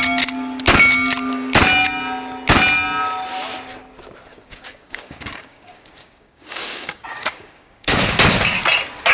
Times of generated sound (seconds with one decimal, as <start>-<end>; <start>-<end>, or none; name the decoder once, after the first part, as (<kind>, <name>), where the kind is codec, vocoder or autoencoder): 4.3-8.0 (codec, DAC)